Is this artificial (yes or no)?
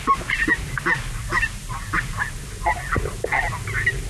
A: no